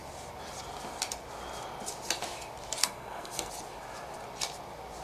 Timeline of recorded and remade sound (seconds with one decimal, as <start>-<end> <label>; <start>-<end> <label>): 0.0-2.8 recorded; 2.8-3.5 remade; 3.5-5.0 recorded